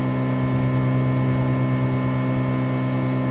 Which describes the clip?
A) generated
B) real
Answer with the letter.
B